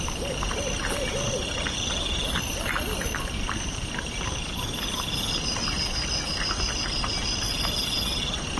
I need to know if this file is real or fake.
real